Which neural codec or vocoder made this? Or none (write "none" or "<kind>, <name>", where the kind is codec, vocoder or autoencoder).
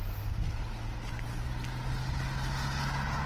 none